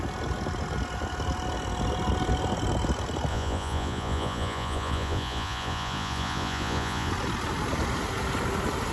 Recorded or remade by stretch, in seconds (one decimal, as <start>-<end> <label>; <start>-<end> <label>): 0.0-3.3 recorded; 3.3-7.1 remade; 7.1-8.9 recorded